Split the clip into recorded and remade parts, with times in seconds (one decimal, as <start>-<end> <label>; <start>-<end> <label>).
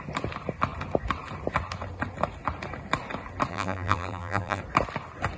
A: 0.0-3.5 recorded; 3.5-4.6 remade; 4.6-5.4 recorded